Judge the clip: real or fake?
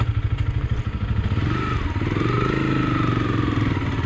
real